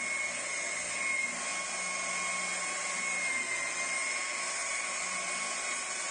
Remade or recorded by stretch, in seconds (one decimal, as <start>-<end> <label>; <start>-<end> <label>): 0.0-6.1 recorded